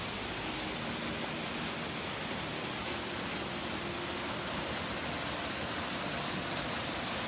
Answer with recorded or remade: recorded